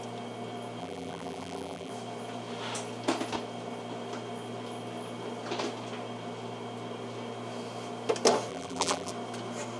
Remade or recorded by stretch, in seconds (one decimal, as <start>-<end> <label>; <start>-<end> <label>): 0.0-0.8 recorded; 0.8-1.9 remade; 1.9-8.5 recorded; 8.5-9.1 remade; 9.1-9.8 recorded